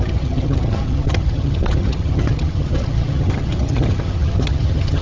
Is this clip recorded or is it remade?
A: remade